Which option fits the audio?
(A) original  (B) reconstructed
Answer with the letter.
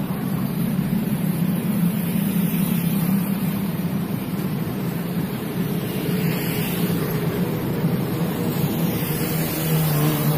B